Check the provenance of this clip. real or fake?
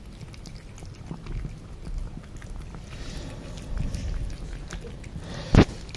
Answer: real